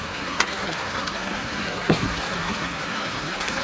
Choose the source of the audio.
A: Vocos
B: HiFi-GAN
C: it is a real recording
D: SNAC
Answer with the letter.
D